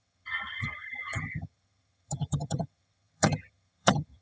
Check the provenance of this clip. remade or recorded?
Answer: remade